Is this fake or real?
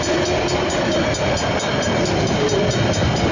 real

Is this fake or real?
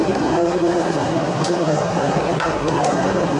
fake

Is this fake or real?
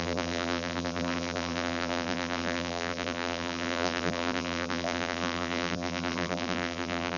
fake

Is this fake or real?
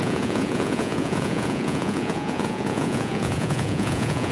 fake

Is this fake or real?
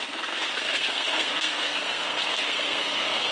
fake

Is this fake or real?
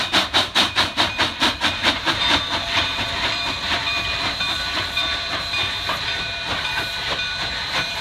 fake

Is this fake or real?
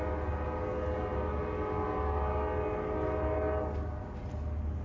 real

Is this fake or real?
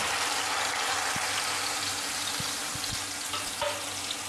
real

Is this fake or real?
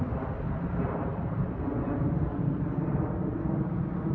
real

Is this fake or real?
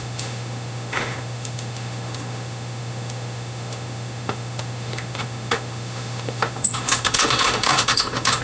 fake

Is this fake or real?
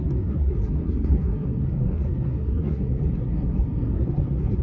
fake